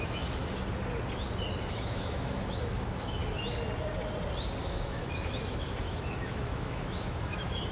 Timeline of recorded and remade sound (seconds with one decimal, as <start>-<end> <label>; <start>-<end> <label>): 0.0-0.4 remade; 0.4-1.7 recorded; 1.7-3.2 remade; 3.2-4.6 recorded; 4.6-7.7 remade